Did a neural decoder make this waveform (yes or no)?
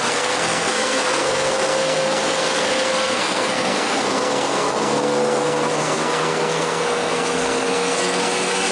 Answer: yes